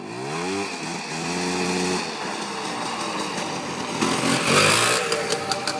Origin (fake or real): real